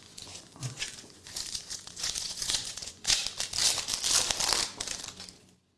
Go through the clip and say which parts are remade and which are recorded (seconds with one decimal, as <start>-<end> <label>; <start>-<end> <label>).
0.0-3.2 remade; 3.2-5.8 recorded